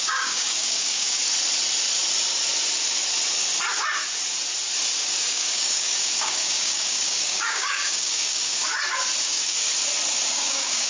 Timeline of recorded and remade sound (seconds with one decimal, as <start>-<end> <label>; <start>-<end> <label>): 0.0-1.2 remade; 1.2-5.0 recorded; 5.0-8.6 remade; 8.6-9.2 recorded; 9.2-9.7 remade; 9.7-10.3 recorded; 10.3-10.9 remade